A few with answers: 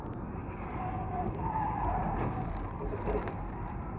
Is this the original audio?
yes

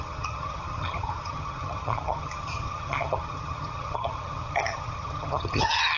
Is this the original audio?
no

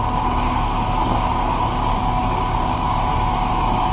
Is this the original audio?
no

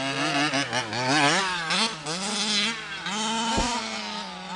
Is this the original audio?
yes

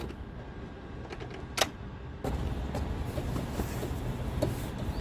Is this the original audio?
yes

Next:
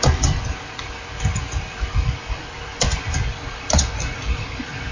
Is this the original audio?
no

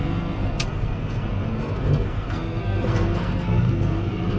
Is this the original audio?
no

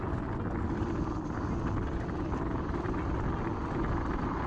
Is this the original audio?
yes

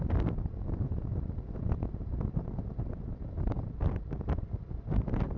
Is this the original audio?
no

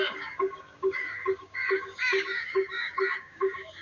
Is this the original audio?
no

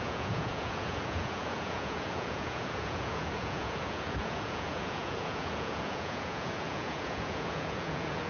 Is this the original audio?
no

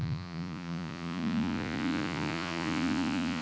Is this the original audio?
no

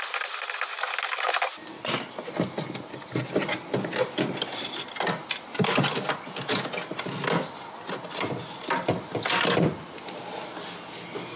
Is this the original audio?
yes